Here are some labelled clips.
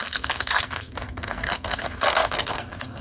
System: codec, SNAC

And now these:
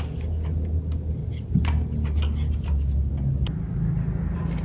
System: none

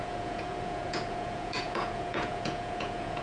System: vocoder, Vocos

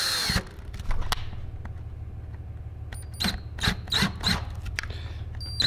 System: none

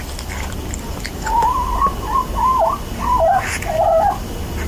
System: none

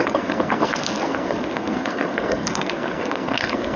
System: codec, SNAC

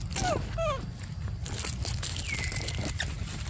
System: none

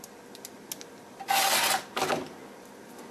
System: none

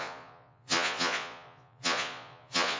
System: vocoder, Vocos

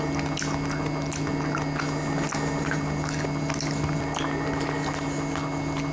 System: none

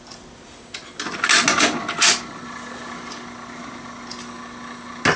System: none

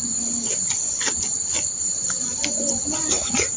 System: none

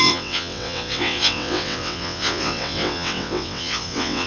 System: vocoder, WaveNeXt